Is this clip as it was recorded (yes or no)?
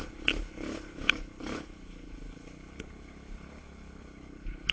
no